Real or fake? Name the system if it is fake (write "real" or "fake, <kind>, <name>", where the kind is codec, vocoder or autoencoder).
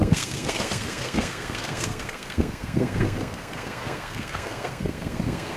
fake, codec, SNAC